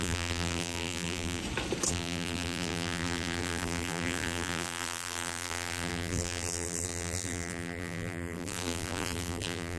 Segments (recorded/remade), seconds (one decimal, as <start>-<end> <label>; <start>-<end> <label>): 0.0-1.4 remade; 1.4-1.9 recorded; 1.9-9.8 remade